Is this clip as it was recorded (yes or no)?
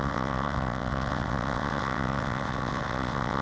no